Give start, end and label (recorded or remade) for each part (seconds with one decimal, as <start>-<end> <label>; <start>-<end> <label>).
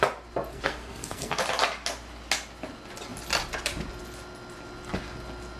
0.0-0.5 recorded; 0.5-1.4 remade; 1.4-5.6 recorded